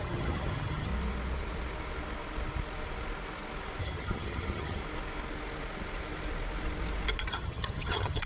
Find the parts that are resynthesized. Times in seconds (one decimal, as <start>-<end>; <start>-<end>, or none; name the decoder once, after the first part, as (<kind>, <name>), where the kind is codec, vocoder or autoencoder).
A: 0.0-0.9 (vocoder, HiFi-GAN); 3.8-4.8; 7.3-8.3